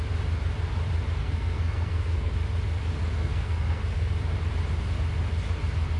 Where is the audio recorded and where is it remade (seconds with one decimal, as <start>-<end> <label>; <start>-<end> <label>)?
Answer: 0.0-1.2 recorded; 1.2-2.3 remade; 2.3-3.2 recorded; 3.2-4.1 remade; 4.1-6.0 recorded